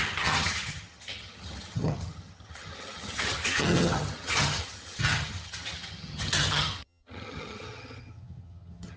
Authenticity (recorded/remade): remade